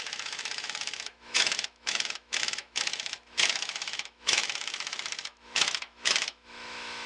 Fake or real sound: fake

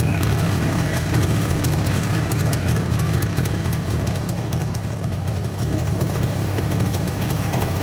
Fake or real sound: fake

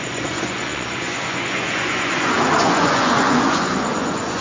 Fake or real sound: fake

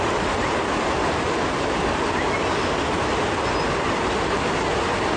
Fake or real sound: real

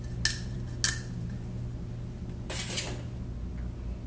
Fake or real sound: real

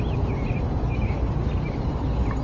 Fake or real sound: real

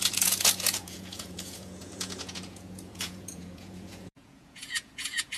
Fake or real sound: fake